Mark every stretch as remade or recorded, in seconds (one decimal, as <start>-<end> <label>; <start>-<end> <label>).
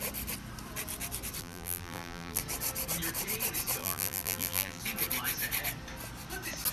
0.0-1.4 recorded; 1.4-2.4 remade; 2.4-3.8 recorded; 3.8-4.8 remade; 4.8-6.7 recorded